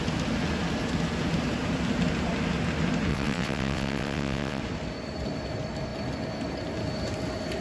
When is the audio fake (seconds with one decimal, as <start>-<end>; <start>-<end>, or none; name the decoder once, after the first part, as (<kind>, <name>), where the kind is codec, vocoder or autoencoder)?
3.1-4.6 (vocoder, WaveNeXt)